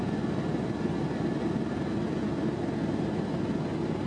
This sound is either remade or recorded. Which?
recorded